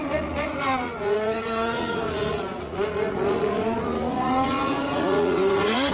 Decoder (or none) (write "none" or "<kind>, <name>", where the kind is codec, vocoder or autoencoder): vocoder, Vocos